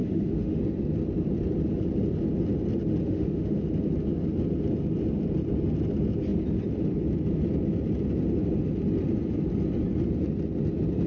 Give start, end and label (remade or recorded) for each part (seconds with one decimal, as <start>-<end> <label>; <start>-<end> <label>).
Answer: 0.0-0.6 remade; 0.6-3.0 recorded; 3.0-3.6 remade; 3.6-11.1 recorded